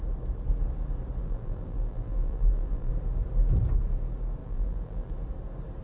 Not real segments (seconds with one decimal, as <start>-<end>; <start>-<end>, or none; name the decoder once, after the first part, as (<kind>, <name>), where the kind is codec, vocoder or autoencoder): 1.2-2.9 (vocoder, BigVGAN v2); 4.4-5.1

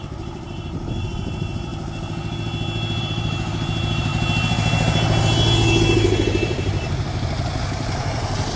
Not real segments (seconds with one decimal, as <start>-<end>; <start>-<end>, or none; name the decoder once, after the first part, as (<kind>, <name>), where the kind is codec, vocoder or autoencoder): 0.0-1.7 (vocoder, BigVGAN v2); 3.0-4.1; 5.8-8.6

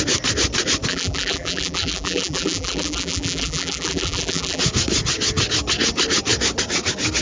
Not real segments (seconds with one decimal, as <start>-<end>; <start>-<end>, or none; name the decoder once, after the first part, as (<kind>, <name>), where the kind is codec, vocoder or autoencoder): 0.9-4.6 (vocoder, BigVGAN v2)